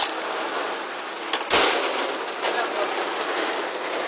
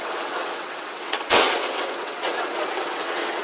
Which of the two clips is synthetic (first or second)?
second